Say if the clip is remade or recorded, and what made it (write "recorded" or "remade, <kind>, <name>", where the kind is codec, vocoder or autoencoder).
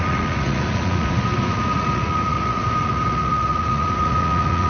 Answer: remade, vocoder, Vocos